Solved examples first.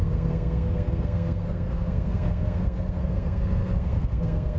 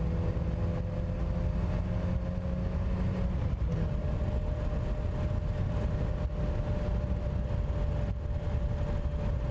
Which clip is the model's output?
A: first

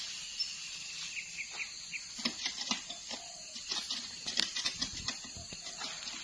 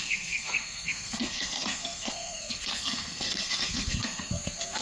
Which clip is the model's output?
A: second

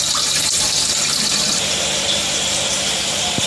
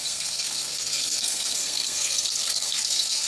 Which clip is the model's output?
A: second